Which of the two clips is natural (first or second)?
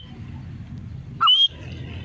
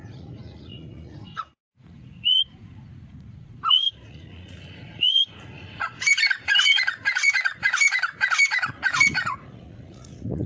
first